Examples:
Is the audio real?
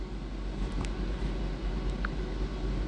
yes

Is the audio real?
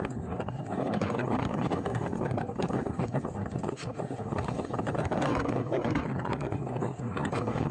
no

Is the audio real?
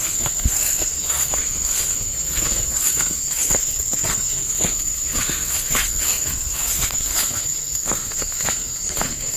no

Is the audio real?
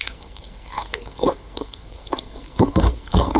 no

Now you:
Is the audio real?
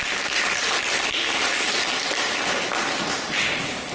yes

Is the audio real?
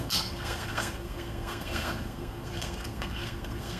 no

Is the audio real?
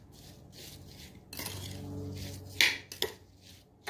yes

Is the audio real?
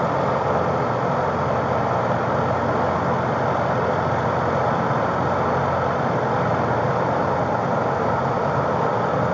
yes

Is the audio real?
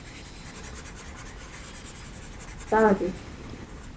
yes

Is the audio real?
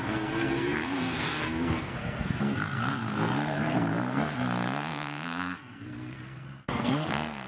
no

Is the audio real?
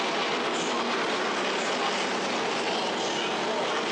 yes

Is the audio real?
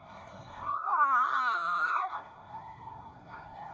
no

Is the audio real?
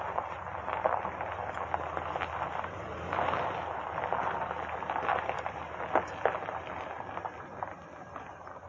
yes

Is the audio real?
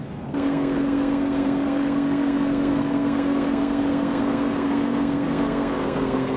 no